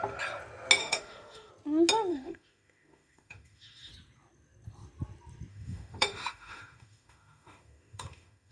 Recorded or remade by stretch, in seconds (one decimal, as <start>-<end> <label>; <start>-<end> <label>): 0.0-0.8 recorded; 0.8-1.5 remade; 1.5-2.1 recorded; 2.1-3.9 remade; 3.9-5.5 recorded; 5.5-8.5 remade